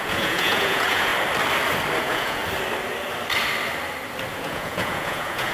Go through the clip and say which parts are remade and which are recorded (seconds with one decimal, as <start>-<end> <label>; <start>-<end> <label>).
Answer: 0.0-1.1 remade; 1.1-2.0 recorded; 2.0-2.4 remade; 2.4-4.3 recorded; 4.3-5.5 remade